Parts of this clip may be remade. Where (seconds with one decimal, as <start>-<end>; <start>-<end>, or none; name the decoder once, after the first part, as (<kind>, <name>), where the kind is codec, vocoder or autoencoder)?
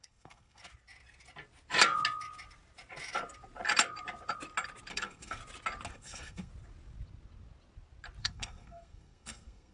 0.0-0.6 (codec, SNAC); 4.9-5.4; 5.9-6.5; 8.2-9.7